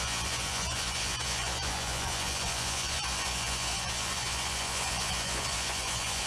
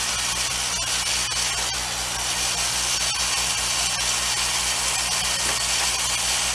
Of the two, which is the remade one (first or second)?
first